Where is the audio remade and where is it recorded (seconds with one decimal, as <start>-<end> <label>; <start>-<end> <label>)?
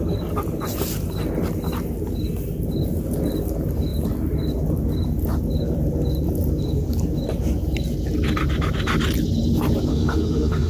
0.0-9.9 recorded; 9.9-10.7 remade